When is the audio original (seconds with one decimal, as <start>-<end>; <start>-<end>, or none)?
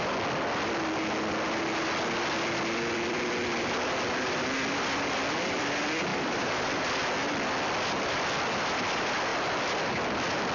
0.0-6.1; 6.8-10.5